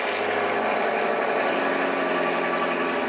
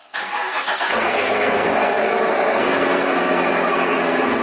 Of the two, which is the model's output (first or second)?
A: second